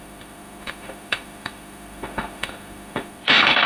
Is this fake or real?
fake